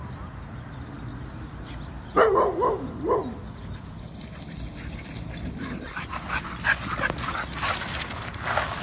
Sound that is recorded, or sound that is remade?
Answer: recorded